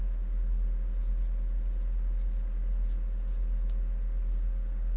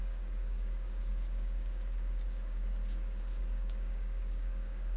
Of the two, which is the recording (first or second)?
first